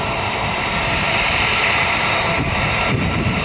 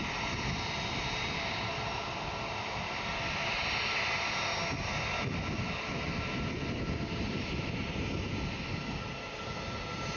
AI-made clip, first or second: first